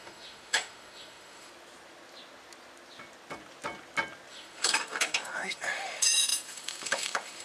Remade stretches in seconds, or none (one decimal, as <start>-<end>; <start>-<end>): 0.0-1.5; 4.3-7.4